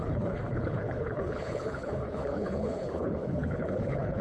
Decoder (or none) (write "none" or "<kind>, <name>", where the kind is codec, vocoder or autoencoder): codec, HILCodec